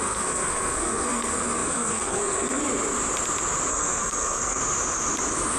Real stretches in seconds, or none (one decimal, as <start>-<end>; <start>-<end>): 2.6-3.7; 4.6-5.6